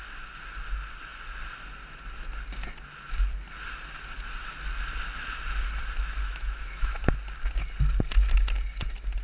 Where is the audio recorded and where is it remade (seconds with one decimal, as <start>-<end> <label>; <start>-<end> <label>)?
0.0-6.2 recorded; 6.2-7.0 remade; 7.0-9.2 recorded